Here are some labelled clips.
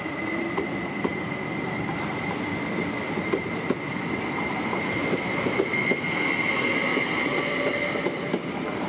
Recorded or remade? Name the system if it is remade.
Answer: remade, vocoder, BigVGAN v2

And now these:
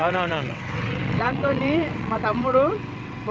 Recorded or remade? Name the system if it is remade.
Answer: remade, vocoder, WaveNeXt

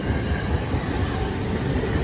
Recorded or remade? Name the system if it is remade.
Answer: recorded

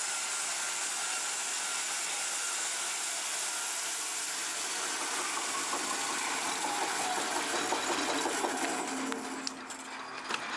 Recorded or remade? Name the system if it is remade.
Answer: recorded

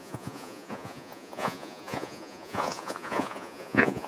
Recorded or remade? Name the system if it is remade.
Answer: remade, vocoder, Vocos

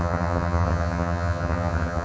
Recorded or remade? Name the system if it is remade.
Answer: remade, vocoder, HiFi-GAN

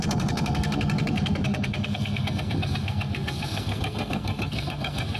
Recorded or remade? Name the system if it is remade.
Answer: remade, codec, SNAC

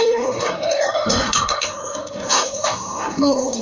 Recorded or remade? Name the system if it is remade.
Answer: remade, codec, SNAC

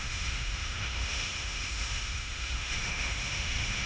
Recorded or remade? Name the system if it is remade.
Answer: remade, autoencoder, DAC-VAE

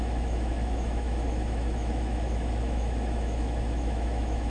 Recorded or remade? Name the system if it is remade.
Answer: remade, autoencoder, DAC-VAE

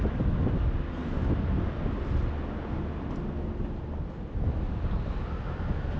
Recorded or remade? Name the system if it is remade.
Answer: recorded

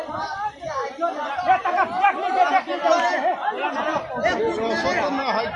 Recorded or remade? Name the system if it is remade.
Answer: recorded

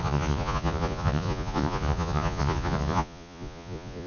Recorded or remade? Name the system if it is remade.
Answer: remade, vocoder, Vocos